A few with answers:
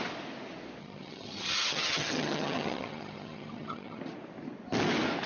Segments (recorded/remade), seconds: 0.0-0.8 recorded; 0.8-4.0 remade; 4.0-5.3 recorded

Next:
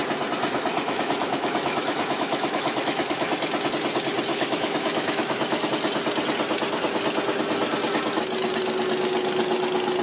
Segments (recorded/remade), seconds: 0.0-0.7 recorded; 0.7-3.3 remade; 3.3-4.3 recorded; 4.3-5.7 remade; 5.7-10.0 recorded

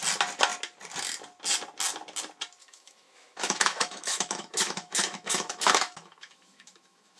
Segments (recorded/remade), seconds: 0.0-2.6 recorded; 2.6-7.2 remade

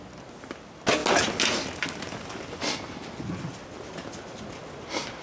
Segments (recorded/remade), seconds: 0.0-5.2 recorded

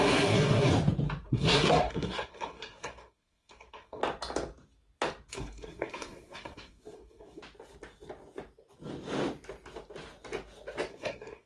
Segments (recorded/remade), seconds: 0.0-0.7 remade; 0.7-1.3 recorded; 1.3-4.0 remade; 4.0-5.3 recorded; 5.3-7.4 remade; 7.4-10.9 recorded; 10.9-11.5 remade

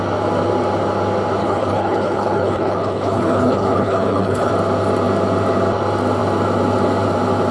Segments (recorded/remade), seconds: 0.0-1.4 recorded; 1.4-4.5 remade; 4.5-7.5 recorded

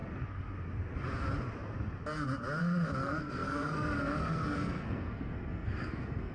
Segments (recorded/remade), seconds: 0.0-2.6 recorded; 2.6-6.3 remade